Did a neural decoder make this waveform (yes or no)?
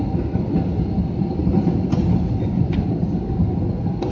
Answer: no